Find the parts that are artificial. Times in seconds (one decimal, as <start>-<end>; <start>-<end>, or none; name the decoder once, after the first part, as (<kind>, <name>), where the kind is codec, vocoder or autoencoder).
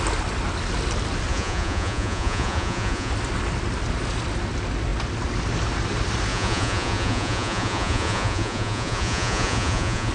1.3-3.1 (vocoder, Vocos); 6.3-10.1